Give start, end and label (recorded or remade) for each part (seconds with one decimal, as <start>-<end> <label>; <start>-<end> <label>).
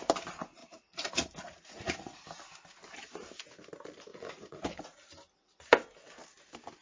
0.0-0.6 recorded; 0.6-2.3 remade; 2.3-4.1 recorded; 4.1-4.8 remade; 4.8-6.8 recorded